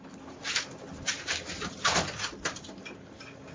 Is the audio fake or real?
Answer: real